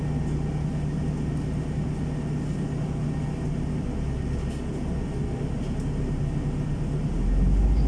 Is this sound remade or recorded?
recorded